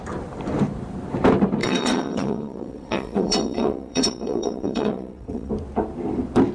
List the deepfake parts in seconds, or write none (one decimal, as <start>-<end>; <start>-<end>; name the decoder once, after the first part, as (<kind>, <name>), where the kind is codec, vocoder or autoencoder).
1.6-5.5 (vocoder, WaveNeXt)